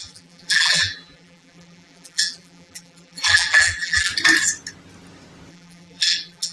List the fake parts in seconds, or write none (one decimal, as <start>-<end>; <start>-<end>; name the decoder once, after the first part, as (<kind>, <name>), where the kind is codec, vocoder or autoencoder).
0.0-4.1 (vocoder, BigVGAN v2); 5.5-6.5